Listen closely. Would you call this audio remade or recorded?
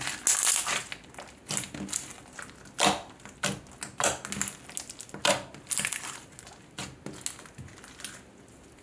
recorded